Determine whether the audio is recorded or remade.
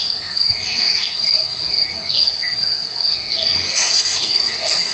remade